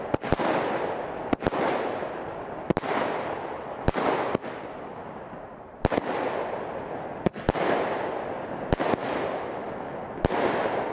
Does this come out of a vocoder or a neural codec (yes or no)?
no